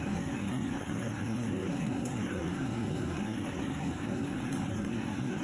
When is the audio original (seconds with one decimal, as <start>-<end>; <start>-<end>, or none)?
none